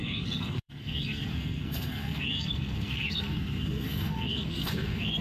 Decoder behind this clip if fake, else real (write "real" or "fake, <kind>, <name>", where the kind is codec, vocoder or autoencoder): fake, codec, SNAC